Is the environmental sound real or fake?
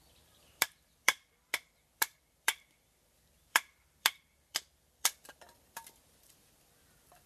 fake